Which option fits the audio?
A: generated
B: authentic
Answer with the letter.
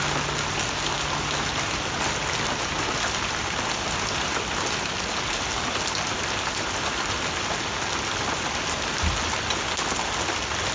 B